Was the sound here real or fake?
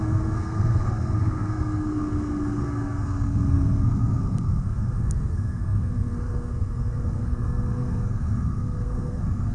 fake